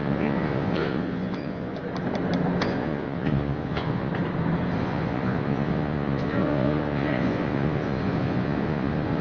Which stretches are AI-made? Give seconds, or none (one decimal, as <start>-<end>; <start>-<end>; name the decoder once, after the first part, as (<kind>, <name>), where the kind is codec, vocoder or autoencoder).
0.0-1.8 (vocoder, Vocos); 2.6-4.1; 4.8-9.2